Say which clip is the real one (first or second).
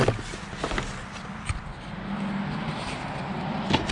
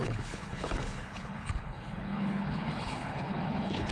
first